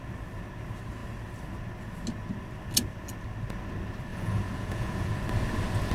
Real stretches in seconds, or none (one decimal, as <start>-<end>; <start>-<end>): 0.0-4.1; 5.1-5.9